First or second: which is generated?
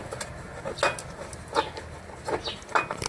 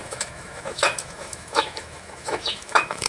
second